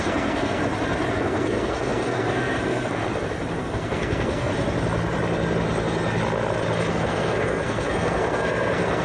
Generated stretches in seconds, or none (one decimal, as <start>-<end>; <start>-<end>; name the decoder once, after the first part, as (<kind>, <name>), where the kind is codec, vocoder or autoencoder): 0.0-0.6 (codec, SNAC); 1.1-3.0; 3.6-4.5; 6.9-9.0